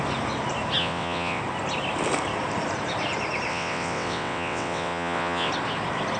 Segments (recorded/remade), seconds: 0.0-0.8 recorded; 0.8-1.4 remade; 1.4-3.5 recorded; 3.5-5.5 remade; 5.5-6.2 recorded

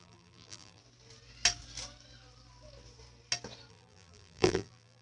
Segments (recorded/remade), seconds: 0.0-0.8 remade; 0.8-3.7 recorded; 3.7-5.0 remade

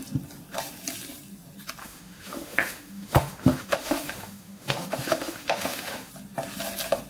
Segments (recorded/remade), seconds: 0.0-1.8 recorded; 1.8-6.1 remade; 6.1-7.1 recorded

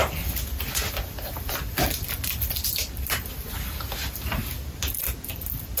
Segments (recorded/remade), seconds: 0.0-5.8 recorded

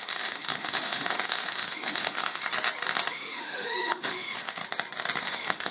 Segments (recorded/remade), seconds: 0.0-2.4 remade; 2.4-3.1 recorded; 3.1-4.6 remade; 4.6-5.2 recorded; 5.2-5.7 remade

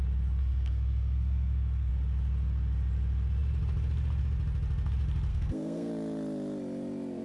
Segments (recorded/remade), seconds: 0.0-0.4 recorded; 0.4-1.9 remade; 1.9-5.3 recorded; 5.3-5.9 remade; 5.9-7.2 recorded

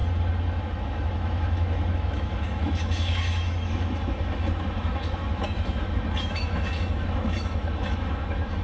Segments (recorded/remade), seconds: 0.0-0.6 recorded; 0.6-8.6 remade